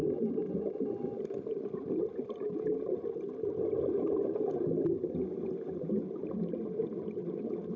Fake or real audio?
real